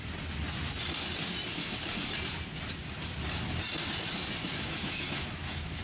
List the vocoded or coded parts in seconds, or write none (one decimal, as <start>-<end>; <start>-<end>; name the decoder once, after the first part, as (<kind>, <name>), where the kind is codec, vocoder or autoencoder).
4.4-5.8 (autoencoder, DAC-VAE)